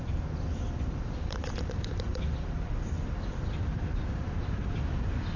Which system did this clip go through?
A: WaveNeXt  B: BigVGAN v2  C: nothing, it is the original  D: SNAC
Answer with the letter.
B